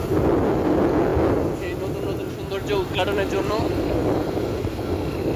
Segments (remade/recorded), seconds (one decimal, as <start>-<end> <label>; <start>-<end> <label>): 0.0-5.4 recorded